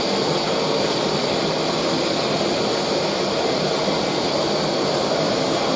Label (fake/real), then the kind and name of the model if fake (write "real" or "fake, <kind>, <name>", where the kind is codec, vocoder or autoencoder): real